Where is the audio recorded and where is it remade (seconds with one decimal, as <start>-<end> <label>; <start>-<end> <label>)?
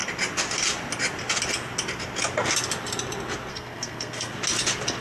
0.0-3.5 recorded; 3.5-4.3 remade; 4.3-5.0 recorded